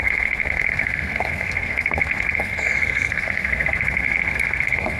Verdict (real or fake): fake